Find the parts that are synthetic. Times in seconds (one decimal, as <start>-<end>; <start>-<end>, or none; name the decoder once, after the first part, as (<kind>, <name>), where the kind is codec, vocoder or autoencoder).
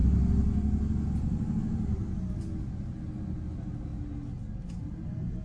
none